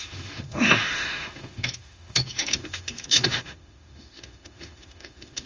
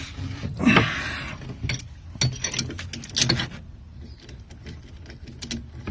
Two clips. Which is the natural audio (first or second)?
second